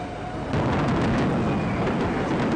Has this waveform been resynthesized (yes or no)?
no